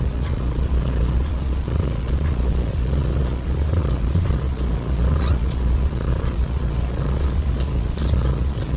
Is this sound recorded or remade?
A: remade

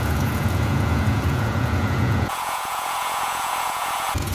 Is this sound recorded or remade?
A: remade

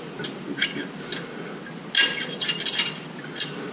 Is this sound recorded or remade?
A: recorded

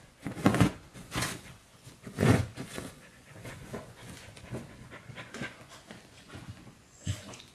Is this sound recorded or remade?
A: remade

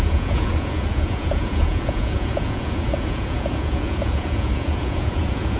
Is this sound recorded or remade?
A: remade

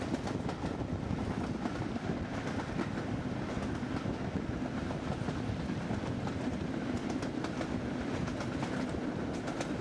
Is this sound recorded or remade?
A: recorded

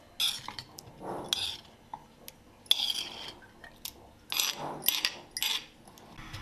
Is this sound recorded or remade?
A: recorded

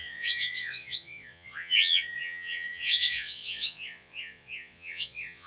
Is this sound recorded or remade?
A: remade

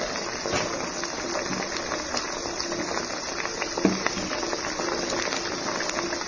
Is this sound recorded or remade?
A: recorded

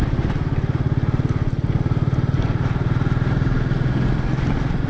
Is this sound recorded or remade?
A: recorded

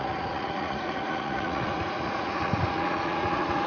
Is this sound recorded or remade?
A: remade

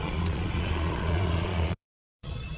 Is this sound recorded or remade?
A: remade